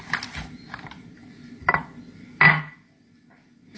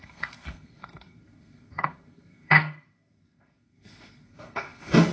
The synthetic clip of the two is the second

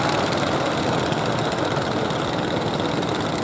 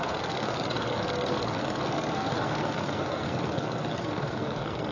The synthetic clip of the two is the second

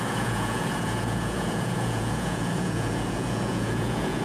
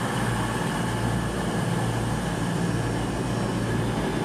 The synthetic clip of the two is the first